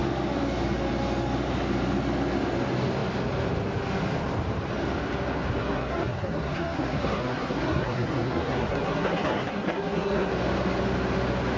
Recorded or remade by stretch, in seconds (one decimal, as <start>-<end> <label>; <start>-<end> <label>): 0.0-5.6 recorded; 5.6-10.3 remade; 10.3-11.6 recorded